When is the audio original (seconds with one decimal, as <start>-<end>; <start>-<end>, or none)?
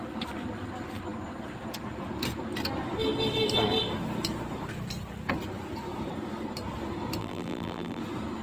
0.0-7.2; 8.0-8.4